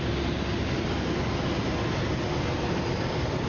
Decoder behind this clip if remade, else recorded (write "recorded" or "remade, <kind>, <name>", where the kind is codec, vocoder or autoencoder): recorded